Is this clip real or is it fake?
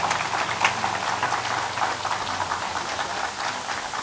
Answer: real